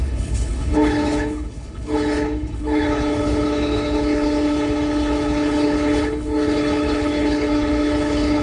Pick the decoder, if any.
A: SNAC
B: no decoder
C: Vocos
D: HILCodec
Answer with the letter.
D